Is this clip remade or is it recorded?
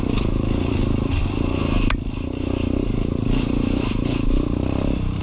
remade